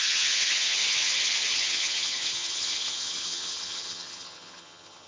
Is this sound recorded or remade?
remade